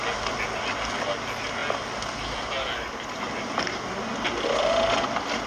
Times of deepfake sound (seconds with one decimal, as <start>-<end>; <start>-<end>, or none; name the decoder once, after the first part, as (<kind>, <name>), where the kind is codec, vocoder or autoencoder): none